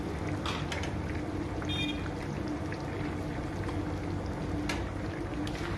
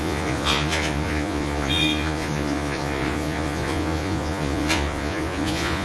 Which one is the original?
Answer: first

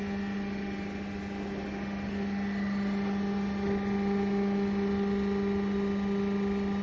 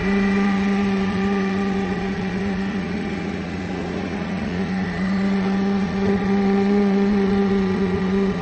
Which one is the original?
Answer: first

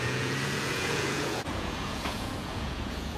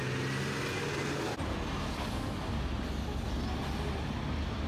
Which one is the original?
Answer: second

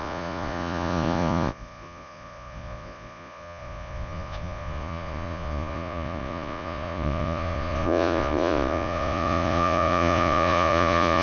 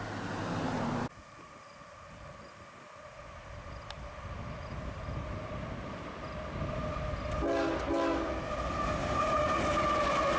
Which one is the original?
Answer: second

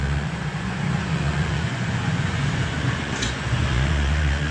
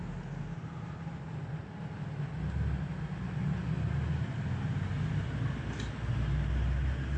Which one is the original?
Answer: second